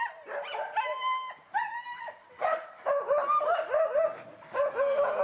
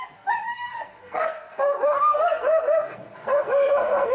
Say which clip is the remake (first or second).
second